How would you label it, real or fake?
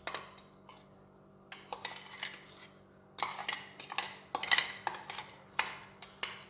real